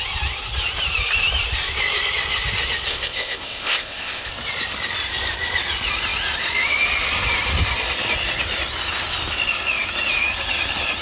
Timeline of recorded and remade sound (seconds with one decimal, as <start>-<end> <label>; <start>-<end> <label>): 0.0-2.9 recorded; 2.9-4.3 remade; 4.3-11.0 recorded